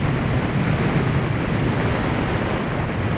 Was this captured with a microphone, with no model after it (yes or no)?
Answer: no